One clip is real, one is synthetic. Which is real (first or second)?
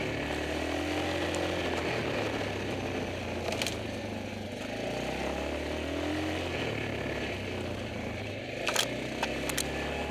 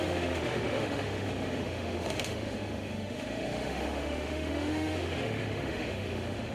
first